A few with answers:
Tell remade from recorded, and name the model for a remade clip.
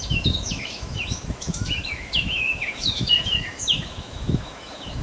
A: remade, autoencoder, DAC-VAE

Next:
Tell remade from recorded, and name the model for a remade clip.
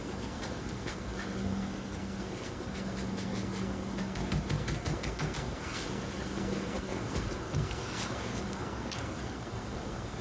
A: remade, codec, SNAC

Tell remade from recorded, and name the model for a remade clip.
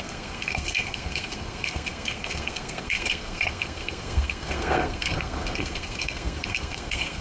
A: remade, codec, SNAC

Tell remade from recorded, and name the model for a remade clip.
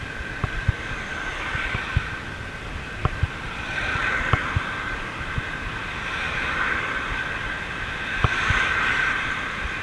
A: recorded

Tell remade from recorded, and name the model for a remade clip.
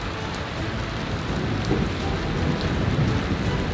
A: recorded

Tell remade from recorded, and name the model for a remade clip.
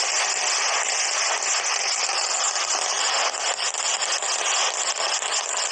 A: recorded